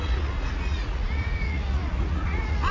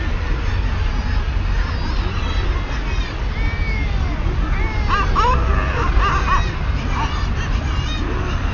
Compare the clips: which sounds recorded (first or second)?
second